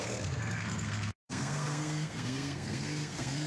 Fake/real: fake